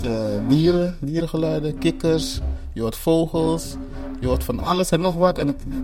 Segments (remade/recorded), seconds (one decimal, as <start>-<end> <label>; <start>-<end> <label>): 0.0-1.2 remade; 1.2-4.6 recorded; 4.6-5.8 remade